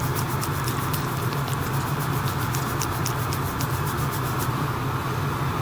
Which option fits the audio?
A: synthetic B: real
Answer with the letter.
B